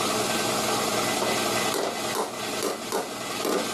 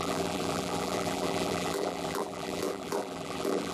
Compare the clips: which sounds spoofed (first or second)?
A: second